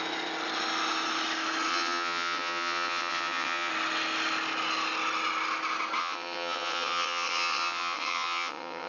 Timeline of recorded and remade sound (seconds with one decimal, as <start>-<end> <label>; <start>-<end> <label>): 0.0-1.7 recorded; 1.7-3.7 remade; 3.7-6.0 recorded; 6.0-8.9 remade